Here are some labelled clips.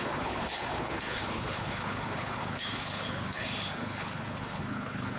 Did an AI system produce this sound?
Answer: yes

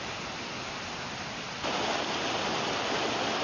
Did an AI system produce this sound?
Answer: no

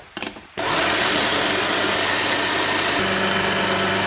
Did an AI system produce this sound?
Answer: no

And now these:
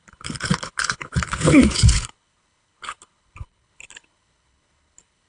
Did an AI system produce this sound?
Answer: yes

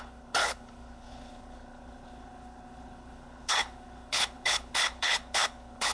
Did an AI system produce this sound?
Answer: yes